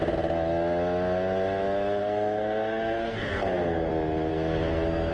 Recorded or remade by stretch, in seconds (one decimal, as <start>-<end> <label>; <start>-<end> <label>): 0.0-2.0 recorded; 2.0-3.9 remade; 3.9-4.3 recorded; 4.3-5.1 remade